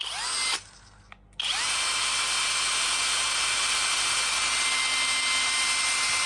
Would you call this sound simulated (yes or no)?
no